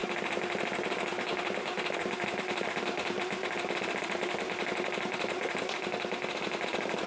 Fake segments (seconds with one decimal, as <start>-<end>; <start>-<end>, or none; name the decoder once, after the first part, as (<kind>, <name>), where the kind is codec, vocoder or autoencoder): none